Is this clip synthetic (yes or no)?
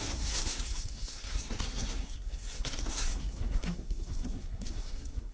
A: yes